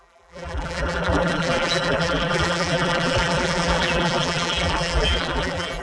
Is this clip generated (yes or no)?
yes